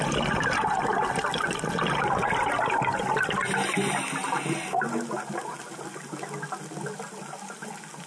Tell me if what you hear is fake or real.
real